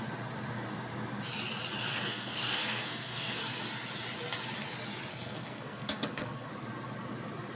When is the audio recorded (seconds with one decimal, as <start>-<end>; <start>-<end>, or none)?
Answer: 0.0-1.9; 3.6-5.1; 6.5-7.6